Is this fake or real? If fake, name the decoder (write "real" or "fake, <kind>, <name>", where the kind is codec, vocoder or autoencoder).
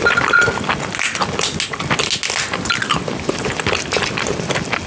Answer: real